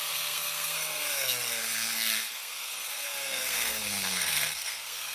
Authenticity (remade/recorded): remade